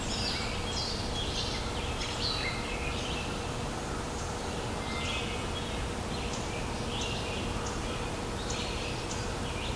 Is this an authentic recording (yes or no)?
yes